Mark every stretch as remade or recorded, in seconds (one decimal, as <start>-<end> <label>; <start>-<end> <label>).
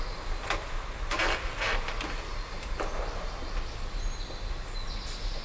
0.0-5.4 recorded